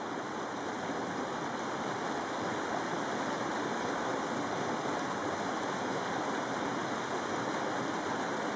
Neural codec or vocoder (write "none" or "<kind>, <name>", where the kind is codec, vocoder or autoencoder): none